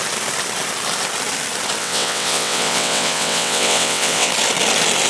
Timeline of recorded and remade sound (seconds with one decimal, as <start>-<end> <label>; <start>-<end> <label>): 0.0-1.8 recorded; 1.8-4.3 remade; 4.3-5.1 recorded